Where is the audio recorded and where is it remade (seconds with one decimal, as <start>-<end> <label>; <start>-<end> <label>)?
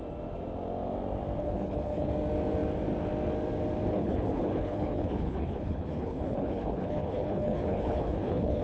0.0-1.4 recorded; 1.4-2.1 remade; 2.1-3.9 recorded; 3.9-8.6 remade